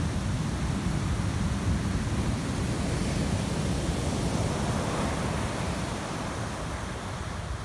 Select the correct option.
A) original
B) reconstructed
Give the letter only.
A